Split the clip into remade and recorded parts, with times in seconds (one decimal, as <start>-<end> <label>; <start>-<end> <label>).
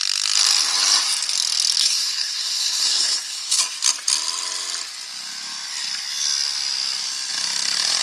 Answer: 0.0-1.8 recorded; 1.8-3.6 remade; 3.6-8.0 recorded